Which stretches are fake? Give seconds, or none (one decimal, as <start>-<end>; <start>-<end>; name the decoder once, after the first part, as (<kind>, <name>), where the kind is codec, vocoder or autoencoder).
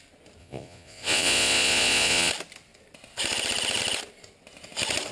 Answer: 0.4-2.3 (vocoder, Vocos)